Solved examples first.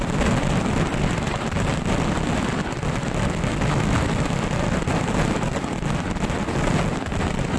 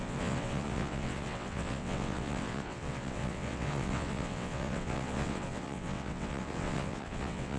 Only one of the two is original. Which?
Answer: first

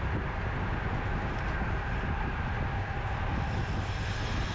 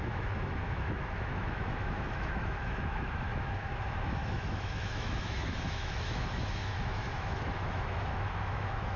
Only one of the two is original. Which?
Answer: first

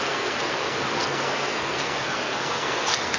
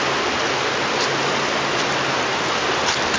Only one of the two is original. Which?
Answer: second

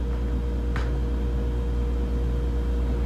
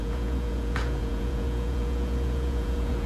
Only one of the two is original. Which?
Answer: first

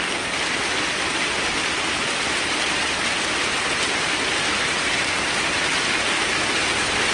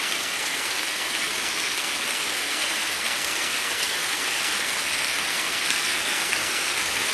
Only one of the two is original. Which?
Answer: first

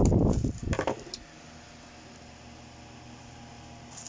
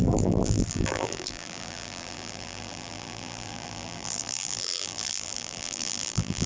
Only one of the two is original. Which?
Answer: first